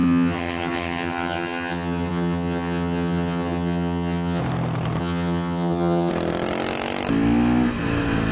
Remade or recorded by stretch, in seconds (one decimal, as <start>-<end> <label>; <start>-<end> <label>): 0.0-4.4 remade; 4.4-5.0 recorded; 5.0-6.1 remade; 6.1-8.3 recorded